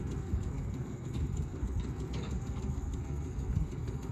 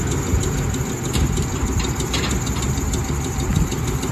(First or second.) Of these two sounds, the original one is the second